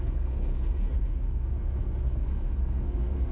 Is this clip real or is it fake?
fake